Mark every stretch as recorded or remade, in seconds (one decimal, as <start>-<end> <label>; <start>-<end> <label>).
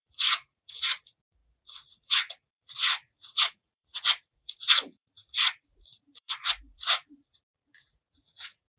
0.0-8.8 remade